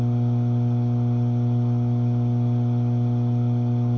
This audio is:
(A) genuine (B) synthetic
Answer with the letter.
A